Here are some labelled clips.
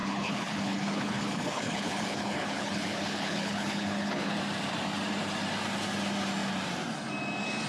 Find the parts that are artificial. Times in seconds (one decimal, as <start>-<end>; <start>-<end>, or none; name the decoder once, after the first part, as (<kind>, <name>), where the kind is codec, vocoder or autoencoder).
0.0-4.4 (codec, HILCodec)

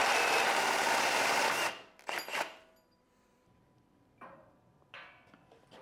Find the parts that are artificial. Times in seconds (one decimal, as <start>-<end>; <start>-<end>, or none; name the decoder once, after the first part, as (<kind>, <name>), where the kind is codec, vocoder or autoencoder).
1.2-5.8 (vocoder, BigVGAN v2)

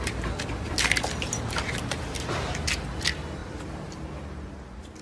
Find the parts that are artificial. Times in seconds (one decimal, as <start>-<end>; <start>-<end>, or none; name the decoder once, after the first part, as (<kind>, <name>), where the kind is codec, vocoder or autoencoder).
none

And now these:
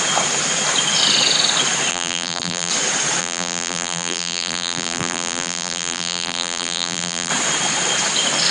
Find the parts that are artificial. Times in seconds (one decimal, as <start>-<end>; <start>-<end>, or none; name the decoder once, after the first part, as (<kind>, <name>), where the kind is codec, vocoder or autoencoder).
1.9-2.7 (vocoder, BigVGAN v2); 3.2-7.3

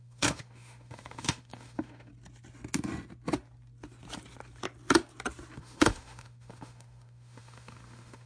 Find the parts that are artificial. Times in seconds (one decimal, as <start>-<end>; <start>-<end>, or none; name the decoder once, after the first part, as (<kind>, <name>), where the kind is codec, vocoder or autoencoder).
0.0-2.1 (autoencoder, DAC-VAE); 5.6-8.3

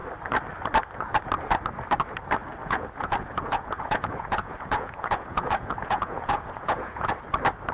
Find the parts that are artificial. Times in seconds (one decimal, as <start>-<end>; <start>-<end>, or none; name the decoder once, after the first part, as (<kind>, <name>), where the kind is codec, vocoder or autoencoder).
2.6-7.1 (vocoder, Vocos)

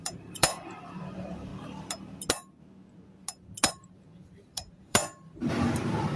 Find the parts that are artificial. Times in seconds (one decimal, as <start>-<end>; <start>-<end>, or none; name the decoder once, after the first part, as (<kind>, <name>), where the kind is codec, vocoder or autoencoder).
0.0-1.5 (vocoder, BigVGAN v2); 3.7-5.0